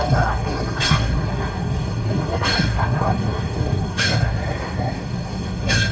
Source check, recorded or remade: remade